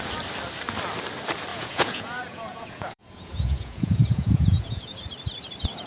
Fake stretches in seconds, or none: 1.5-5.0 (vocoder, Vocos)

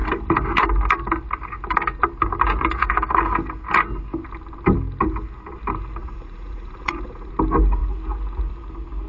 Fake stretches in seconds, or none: 6.0-7.3 (vocoder, Vocos)

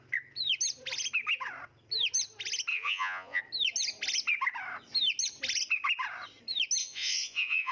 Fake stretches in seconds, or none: 2.7-3.4 (vocoder, Vocos); 6.8-7.7

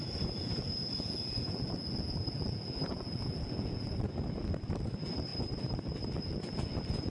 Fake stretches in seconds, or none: 0.4-3.9 (vocoder, Vocos)

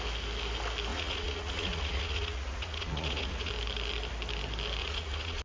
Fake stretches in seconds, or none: 0.9-3.5 (vocoder, Vocos); 4.8-5.4

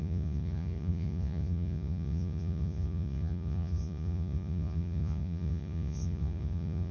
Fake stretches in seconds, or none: 0.0-6.9 (vocoder, Vocos)

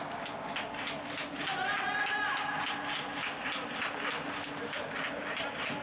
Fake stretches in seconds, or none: none